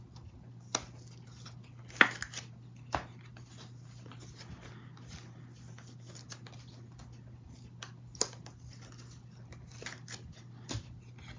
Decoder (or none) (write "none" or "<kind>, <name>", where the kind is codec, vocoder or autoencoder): none